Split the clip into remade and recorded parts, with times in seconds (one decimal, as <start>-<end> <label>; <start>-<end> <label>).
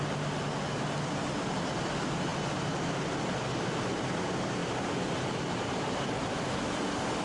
0.0-7.2 recorded